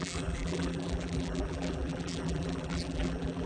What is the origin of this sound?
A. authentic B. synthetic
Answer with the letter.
B